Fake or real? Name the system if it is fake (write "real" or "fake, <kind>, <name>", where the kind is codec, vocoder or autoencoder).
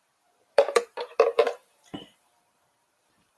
fake, vocoder, BigVGAN v2